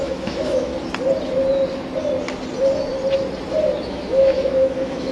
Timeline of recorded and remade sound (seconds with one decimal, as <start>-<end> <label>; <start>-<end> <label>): 0.0-0.7 remade; 0.7-3.8 recorded; 3.8-5.1 remade